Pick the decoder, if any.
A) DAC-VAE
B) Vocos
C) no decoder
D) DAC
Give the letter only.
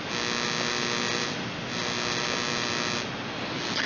C